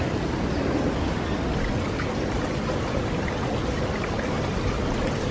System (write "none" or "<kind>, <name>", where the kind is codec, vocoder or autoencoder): none